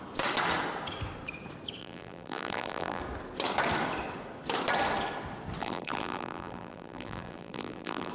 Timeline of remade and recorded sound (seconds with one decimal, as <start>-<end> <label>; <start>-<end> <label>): 0.0-1.8 recorded; 1.8-3.0 remade; 3.0-5.6 recorded; 5.6-8.1 remade